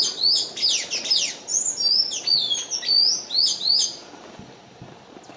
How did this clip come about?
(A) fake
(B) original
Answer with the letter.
B